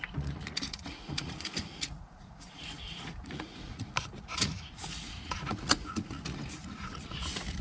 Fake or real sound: fake